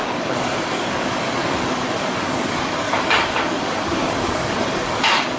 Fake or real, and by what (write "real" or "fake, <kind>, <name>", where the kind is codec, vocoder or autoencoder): fake, codec, DAC